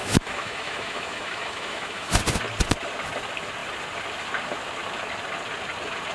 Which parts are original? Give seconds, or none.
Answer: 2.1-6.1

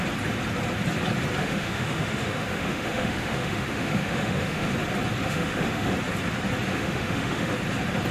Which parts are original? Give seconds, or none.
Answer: 0.0-1.4; 4.7-5.2; 5.9-6.7; 7.5-8.1

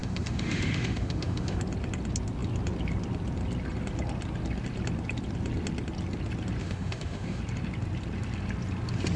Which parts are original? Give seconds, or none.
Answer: 1.6-6.6; 7.4-9.2

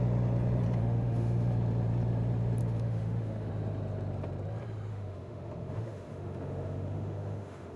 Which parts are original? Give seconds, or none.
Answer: 0.0-0.8; 1.5-2.6; 3.5-4.9

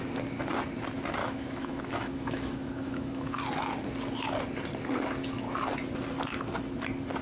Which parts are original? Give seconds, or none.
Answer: 0.0-1.2; 3.4-7.2

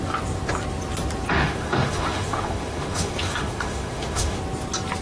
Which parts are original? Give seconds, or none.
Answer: 0.0-1.4; 4.4-5.0

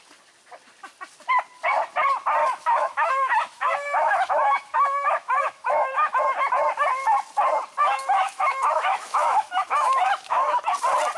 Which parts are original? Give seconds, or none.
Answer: 0.0-2.4; 6.2-7.8; 10.6-11.2